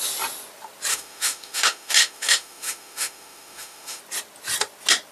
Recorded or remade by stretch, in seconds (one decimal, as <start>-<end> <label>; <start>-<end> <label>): 0.0-0.9 recorded; 0.9-4.0 remade; 4.0-5.1 recorded